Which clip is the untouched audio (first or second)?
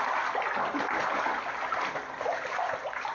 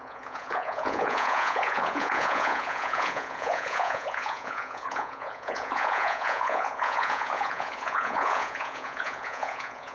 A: first